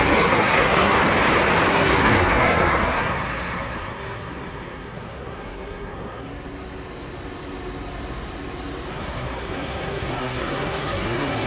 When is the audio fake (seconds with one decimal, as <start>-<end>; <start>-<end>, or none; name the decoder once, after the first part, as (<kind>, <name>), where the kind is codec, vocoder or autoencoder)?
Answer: 0.0-1.0 (codec, SNAC); 1.7-6.3; 8.9-11.5